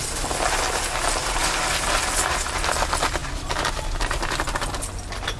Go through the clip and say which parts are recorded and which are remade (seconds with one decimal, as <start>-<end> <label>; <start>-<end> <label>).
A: 0.0-5.4 recorded